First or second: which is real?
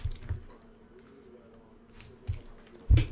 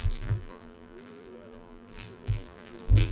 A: first